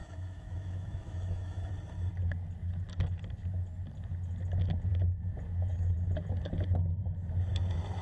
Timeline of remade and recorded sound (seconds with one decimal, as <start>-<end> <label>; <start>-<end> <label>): 0.0-1.7 remade; 1.7-8.0 recorded